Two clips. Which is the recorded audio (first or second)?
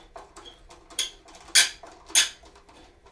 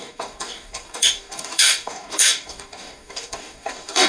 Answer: first